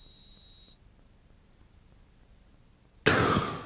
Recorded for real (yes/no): yes